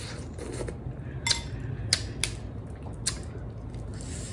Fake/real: real